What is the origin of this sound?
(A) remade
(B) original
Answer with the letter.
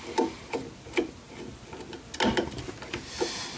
B